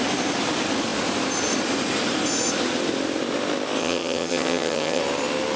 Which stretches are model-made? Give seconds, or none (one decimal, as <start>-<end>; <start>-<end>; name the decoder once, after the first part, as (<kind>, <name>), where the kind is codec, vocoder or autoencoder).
3.8-5.0 (vocoder, HiFi-GAN)